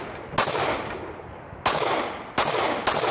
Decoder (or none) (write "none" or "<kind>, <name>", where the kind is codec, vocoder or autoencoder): none